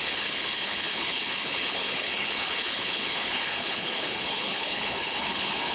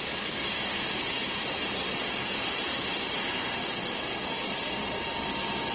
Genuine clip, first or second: second